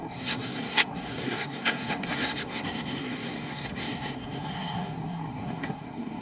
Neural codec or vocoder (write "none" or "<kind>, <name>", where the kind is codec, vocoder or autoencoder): codec, SNAC